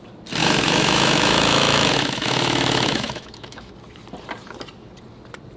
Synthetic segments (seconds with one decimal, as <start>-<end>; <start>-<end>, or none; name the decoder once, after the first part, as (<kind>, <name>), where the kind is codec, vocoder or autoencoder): 0.4-3.7 (autoencoder, DAC-VAE)